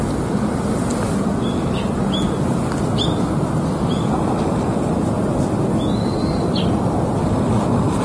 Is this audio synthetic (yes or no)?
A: no